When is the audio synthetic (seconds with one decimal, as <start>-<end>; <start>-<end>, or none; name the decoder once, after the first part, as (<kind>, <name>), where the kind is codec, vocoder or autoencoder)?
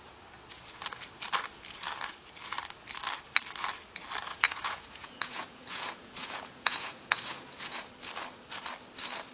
4.3-7.9 (vocoder, Vocos)